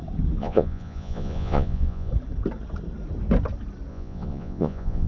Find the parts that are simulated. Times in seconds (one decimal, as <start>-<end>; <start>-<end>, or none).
0.4-2.1; 3.9-5.1